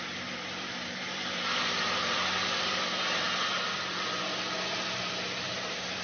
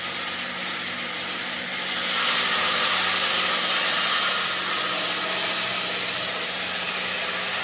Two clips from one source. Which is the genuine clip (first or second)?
second